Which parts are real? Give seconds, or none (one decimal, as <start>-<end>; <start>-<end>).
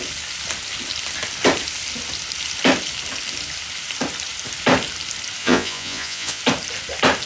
0.0-5.4; 6.4-7.2